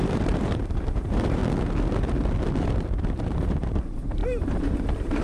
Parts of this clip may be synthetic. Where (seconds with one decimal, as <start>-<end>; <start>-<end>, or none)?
0.0-1.4; 2.6-5.2